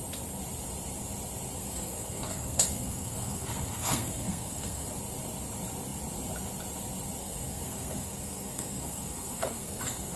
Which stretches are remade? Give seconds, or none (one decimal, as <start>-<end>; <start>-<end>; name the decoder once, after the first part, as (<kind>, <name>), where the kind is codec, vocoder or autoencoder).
1.6-4.9 (codec, SNAC); 7.2-10.2